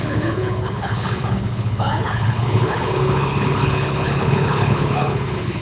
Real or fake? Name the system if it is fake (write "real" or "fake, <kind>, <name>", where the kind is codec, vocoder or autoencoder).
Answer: fake, codec, HILCodec